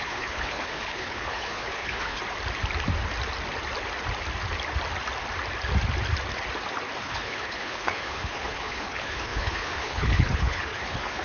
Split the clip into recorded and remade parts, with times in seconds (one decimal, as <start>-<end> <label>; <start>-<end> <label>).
0.0-2.2 remade; 2.2-7.0 recorded; 7.0-11.2 remade